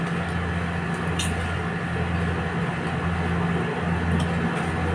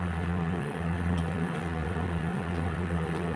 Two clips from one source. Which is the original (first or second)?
first